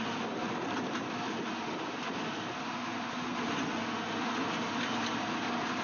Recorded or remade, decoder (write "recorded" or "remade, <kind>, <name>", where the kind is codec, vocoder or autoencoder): recorded